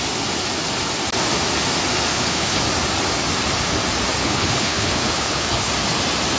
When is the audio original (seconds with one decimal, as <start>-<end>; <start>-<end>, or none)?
0.0-2.1; 2.6-4.2; 5.7-6.4